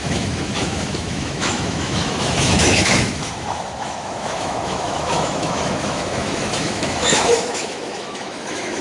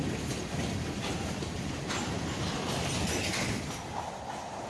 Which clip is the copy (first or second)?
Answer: first